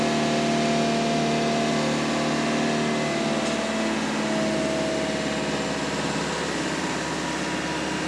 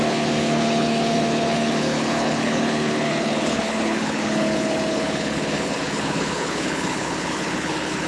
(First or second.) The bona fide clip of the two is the first